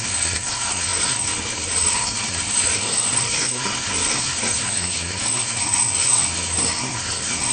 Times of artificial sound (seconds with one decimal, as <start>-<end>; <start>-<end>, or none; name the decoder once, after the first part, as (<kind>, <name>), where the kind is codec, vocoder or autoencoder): 0.0-7.5 (codec, SNAC)